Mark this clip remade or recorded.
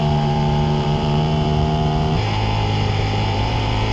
remade